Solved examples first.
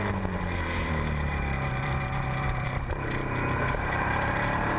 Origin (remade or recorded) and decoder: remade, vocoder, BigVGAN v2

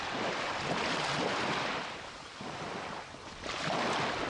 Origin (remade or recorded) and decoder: recorded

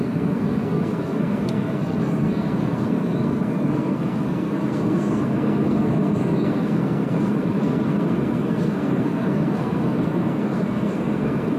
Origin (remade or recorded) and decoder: remade, codec, SNAC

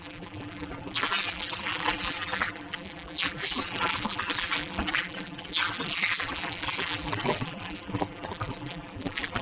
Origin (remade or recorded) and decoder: remade, vocoder, BigVGAN v2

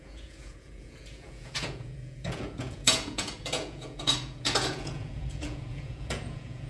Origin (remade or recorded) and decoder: remade, vocoder, Vocos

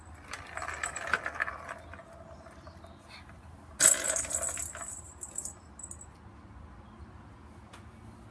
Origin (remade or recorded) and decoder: recorded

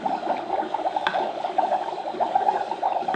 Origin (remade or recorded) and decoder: remade, codec, DAC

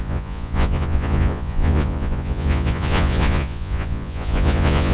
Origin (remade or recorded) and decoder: remade, vocoder, Vocos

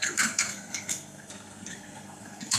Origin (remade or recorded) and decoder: remade, codec, SNAC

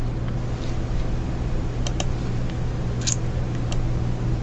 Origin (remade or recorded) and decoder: recorded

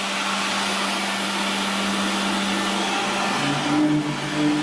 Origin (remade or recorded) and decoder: recorded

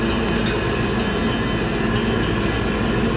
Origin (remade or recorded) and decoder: recorded